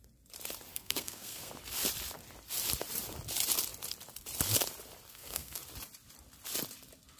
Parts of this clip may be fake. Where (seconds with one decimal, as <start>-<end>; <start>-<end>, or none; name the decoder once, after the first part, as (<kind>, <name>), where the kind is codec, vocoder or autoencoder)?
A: 0.7-1.5 (codec, SNAC); 5.1-5.6